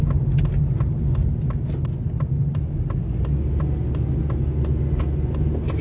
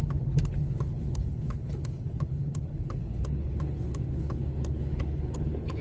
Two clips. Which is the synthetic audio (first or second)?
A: second